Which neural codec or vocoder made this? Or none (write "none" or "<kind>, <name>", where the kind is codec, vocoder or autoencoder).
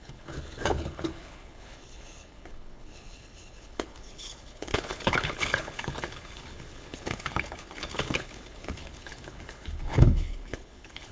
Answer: codec, HILCodec